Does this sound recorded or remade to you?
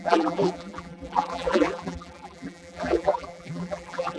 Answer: remade